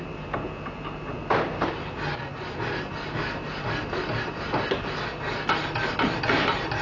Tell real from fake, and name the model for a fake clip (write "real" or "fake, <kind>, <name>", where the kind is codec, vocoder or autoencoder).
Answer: real